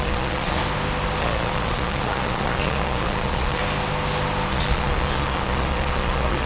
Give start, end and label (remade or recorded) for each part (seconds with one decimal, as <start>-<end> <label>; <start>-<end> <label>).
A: 0.0-0.6 remade; 0.6-1.2 recorded; 1.2-3.6 remade; 3.6-4.5 recorded; 4.5-6.5 remade